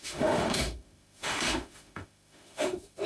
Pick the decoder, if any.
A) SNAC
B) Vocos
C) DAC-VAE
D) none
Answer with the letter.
C